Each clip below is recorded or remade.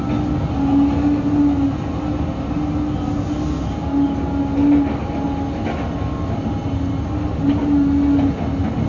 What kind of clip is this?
recorded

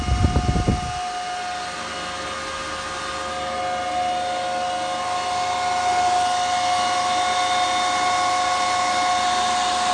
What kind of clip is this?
recorded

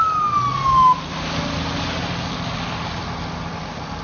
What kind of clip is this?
recorded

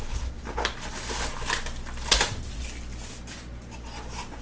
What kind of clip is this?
recorded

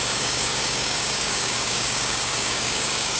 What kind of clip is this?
remade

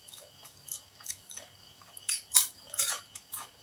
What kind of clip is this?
remade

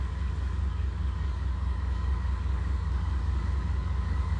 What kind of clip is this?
remade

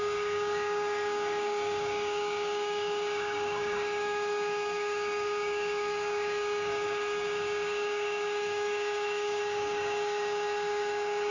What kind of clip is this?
remade